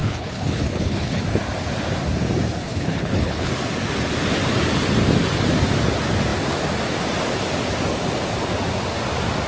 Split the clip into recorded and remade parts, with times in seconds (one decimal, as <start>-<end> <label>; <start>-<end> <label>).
0.0-1.2 remade; 1.2-2.6 recorded; 2.6-3.5 remade; 3.5-9.5 recorded